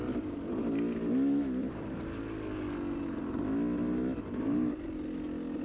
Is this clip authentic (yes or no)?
yes